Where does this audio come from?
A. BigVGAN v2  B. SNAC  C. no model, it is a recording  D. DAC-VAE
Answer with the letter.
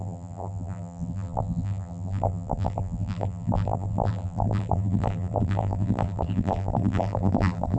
A